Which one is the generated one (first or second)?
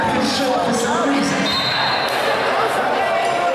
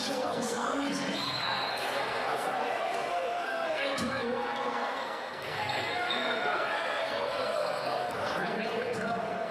second